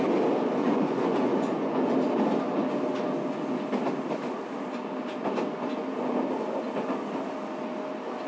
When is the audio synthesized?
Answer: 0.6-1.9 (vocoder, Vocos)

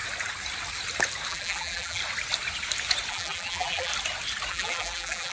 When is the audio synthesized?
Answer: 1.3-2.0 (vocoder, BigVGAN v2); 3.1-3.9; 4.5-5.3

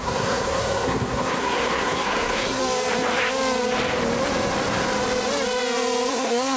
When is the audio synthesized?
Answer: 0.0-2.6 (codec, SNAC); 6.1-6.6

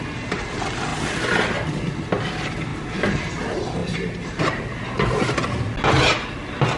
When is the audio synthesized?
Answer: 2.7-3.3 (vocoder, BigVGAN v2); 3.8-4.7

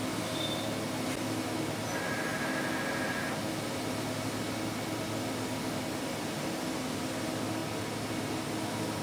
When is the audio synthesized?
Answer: none

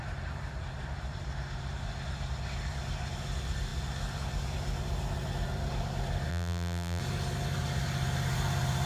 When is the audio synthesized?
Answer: 6.3-7.0 (vocoder, BigVGAN v2)

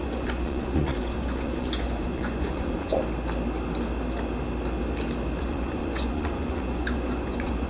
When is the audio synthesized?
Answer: 0.0-3.0 (vocoder, Vocos); 5.4-7.7

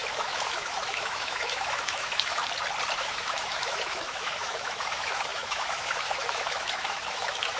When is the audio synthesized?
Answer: 0.0-2.4 (autoencoder, DAC-VAE); 3.0-7.6